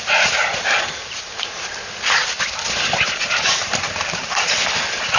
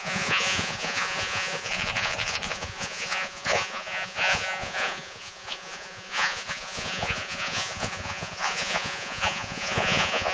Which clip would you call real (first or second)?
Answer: first